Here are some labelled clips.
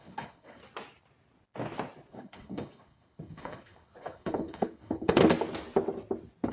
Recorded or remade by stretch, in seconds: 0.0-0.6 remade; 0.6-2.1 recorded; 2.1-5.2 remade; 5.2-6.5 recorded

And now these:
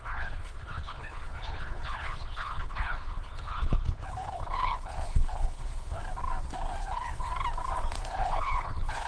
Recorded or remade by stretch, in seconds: 0.0-6.0 remade; 6.0-6.8 recorded; 6.8-7.3 remade; 7.3-8.0 recorded; 8.0-9.1 remade

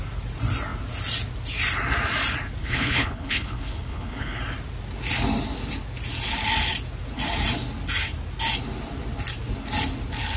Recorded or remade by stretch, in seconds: 0.0-2.6 recorded; 2.6-4.4 remade; 4.4-10.4 recorded

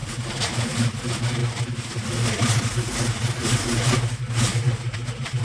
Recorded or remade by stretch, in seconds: 0.0-5.4 recorded

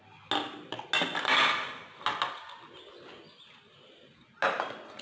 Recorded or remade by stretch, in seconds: 0.0-5.0 recorded